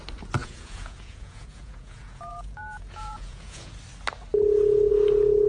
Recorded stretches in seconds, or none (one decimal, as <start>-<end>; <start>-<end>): 0.0-0.4; 3.7-5.5